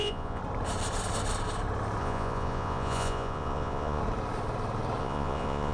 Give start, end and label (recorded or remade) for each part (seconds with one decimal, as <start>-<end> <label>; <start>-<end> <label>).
0.0-0.4 remade; 0.4-2.0 recorded; 2.0-4.0 remade; 4.0-5.0 recorded; 5.0-5.7 remade

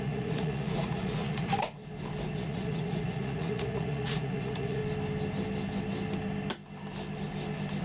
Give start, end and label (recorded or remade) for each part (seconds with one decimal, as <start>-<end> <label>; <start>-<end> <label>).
0.0-1.8 remade; 1.8-2.4 recorded; 2.4-4.8 remade; 4.8-7.8 recorded

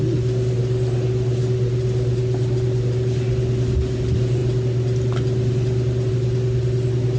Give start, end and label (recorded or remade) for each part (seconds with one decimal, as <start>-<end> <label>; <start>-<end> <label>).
0.0-7.2 recorded

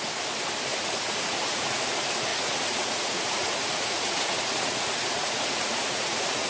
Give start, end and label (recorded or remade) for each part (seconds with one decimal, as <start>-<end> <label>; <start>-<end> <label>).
0.0-0.7 recorded; 0.7-1.8 remade; 1.8-2.3 recorded; 2.3-6.5 remade

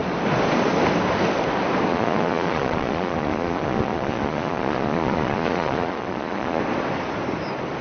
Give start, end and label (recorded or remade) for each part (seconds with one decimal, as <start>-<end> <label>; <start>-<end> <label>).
0.0-1.9 recorded; 1.9-6.6 remade; 6.6-7.8 recorded

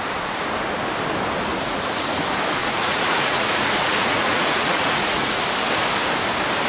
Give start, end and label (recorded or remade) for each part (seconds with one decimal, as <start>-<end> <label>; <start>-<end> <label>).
0.0-1.5 recorded; 1.5-2.2 remade; 2.2-2.6 recorded; 2.6-5.4 remade; 5.4-6.7 recorded

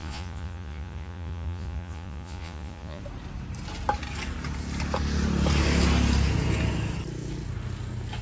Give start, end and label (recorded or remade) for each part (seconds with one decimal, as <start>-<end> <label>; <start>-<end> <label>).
0.0-3.0 remade; 3.0-8.2 recorded